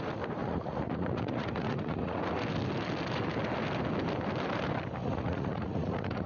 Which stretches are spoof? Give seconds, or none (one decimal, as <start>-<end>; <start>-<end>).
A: 0.4-2.2; 5.0-6.3